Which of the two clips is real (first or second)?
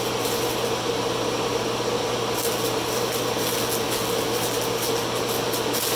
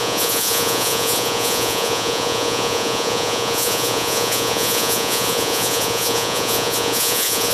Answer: first